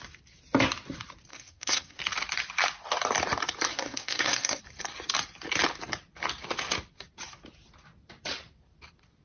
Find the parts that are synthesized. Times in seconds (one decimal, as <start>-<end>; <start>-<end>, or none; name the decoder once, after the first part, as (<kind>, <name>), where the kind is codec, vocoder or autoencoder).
1.3-2.0 (codec, SNAC); 3.7-4.6